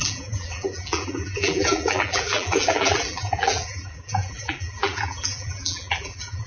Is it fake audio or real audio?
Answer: fake